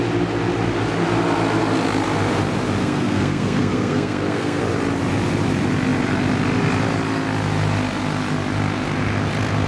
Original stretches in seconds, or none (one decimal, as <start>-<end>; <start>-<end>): 0.0-2.8; 4.6-9.7